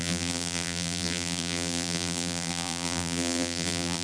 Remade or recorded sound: remade